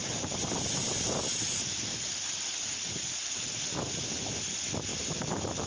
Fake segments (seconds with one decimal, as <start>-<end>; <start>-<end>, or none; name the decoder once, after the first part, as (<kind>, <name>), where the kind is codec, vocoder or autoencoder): 0.0-3.4 (vocoder, BigVGAN v2); 4.9-5.7